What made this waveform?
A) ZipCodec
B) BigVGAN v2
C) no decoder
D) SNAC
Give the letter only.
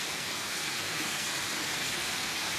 D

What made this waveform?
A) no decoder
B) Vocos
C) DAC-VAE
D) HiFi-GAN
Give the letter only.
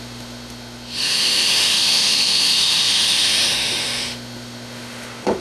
C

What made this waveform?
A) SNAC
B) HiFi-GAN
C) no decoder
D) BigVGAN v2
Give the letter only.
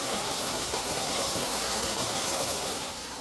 A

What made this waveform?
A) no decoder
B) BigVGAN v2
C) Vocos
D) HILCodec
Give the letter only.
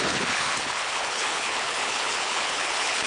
D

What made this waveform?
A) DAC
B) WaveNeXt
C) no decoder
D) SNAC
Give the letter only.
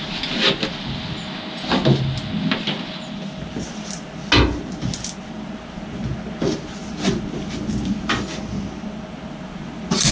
C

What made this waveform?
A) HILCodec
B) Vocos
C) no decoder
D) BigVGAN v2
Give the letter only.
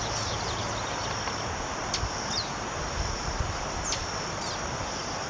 C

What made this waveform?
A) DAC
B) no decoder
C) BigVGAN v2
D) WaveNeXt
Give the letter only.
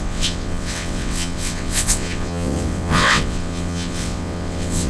D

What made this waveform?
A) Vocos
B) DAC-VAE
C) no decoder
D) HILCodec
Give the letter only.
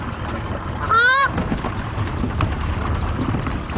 C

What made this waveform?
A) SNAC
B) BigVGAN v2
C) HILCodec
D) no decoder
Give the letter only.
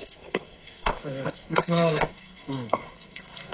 A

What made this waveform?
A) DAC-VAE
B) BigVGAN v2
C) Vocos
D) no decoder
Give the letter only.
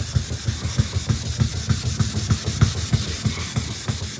D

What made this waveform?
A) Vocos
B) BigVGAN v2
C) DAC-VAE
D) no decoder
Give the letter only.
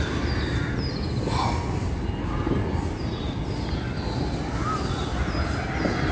D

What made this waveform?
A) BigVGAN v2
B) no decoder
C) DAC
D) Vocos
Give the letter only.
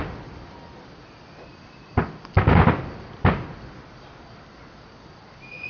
B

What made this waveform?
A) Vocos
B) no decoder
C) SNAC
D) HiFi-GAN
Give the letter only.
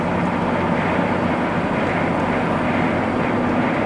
B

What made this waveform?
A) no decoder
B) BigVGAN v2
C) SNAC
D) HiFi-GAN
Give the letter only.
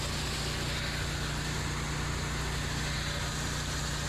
A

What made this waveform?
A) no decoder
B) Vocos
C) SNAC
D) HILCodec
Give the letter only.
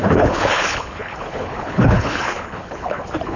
D